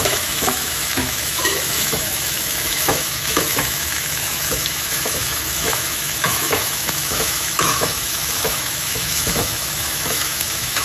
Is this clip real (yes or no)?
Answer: no